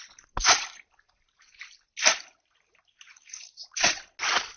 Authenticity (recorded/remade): recorded